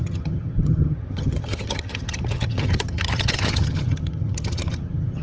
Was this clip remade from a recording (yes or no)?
yes